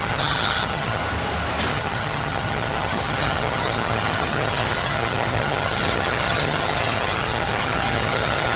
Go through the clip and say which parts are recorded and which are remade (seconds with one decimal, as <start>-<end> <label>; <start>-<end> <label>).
0.0-1.0 remade; 1.0-1.7 recorded; 1.7-8.6 remade